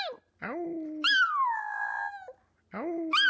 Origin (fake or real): real